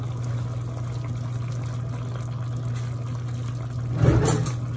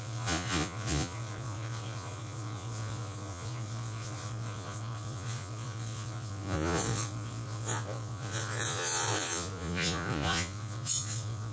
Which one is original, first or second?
first